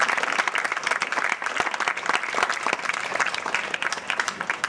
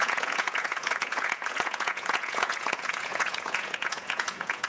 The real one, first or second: first